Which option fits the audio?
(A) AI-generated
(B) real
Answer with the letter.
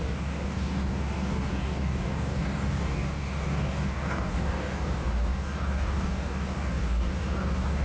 A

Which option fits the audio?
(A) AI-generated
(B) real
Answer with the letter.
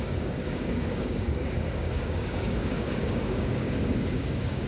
A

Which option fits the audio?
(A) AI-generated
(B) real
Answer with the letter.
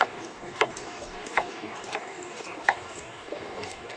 A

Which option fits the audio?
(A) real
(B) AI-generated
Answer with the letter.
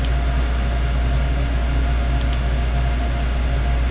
A